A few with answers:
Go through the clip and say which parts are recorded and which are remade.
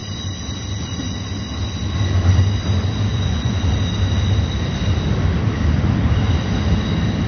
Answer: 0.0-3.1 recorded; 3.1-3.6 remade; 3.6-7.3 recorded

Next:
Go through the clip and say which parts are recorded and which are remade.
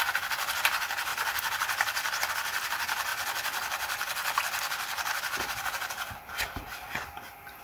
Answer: 0.0-7.6 recorded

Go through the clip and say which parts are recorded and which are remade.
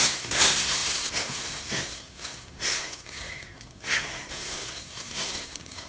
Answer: 0.0-5.9 remade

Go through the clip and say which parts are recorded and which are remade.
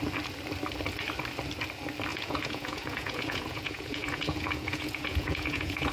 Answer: 0.0-2.1 recorded; 2.1-5.9 remade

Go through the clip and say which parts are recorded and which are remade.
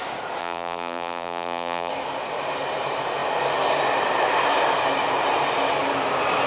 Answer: 0.0-0.4 recorded; 0.4-1.9 remade; 1.9-6.5 recorded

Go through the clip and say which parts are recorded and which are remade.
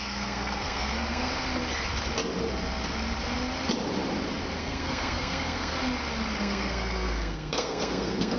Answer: 0.0-1.3 remade; 1.3-4.6 recorded; 4.6-5.7 remade; 5.7-6.4 recorded; 6.4-8.4 remade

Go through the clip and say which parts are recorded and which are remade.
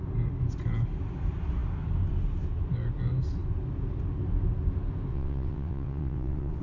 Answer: 0.0-5.1 recorded; 5.1-6.6 remade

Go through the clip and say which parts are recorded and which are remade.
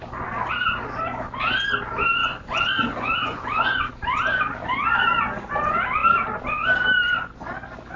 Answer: 0.0-2.2 recorded; 2.2-3.9 remade; 3.9-8.0 recorded